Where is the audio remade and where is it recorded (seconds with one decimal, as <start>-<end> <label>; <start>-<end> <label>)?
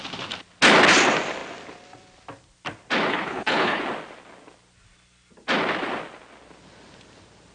0.0-3.1 recorded; 3.1-3.8 remade; 3.8-7.5 recorded